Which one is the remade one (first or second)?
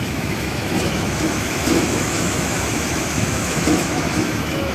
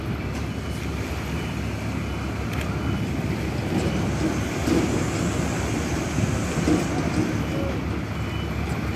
first